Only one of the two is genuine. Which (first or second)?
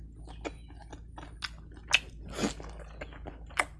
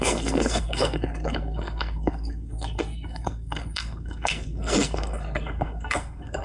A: first